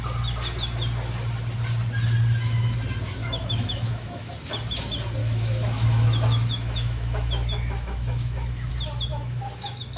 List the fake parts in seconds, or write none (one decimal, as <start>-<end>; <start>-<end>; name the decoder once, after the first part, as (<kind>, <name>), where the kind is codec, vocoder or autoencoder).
3.2-4.3 (autoencoder, DAC-VAE); 5.2-8.7; 9.1-10.0